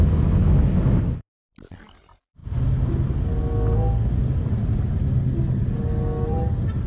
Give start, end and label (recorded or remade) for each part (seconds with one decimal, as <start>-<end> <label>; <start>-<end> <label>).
0.0-6.9 recorded